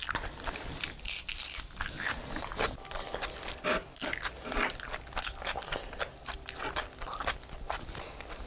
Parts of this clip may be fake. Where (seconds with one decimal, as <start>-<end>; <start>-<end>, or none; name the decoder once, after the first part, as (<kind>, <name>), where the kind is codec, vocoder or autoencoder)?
none